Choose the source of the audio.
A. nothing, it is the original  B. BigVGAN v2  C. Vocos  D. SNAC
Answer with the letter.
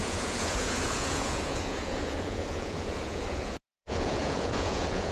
C